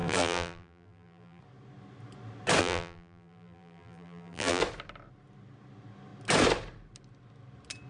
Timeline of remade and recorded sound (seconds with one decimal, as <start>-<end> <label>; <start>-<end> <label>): 0.0-1.4 remade; 1.4-2.6 recorded; 2.6-4.6 remade; 4.6-7.9 recorded